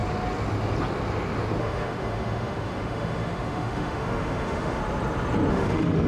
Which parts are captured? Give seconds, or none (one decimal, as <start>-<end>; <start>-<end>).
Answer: 0.0-1.6; 4.8-5.5